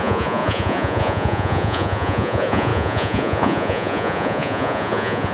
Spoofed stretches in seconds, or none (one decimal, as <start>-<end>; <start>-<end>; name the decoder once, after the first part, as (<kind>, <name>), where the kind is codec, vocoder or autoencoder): 0.0-5.3 (vocoder, Vocos)